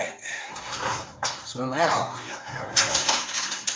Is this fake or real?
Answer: fake